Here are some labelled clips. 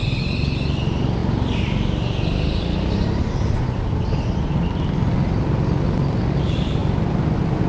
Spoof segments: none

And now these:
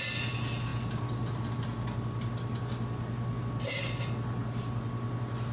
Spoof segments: none

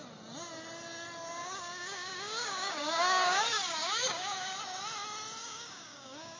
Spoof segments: 1.4-4.6 (codec, DAC); 5.4-6.4